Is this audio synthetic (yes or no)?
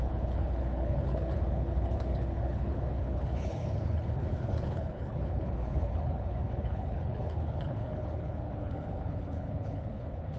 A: yes